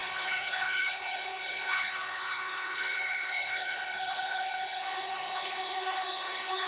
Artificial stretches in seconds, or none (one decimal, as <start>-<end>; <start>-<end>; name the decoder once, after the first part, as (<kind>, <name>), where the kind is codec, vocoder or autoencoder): 0.0-6.7 (codec, HILCodec)